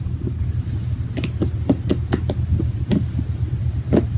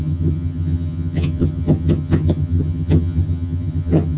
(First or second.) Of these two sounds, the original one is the first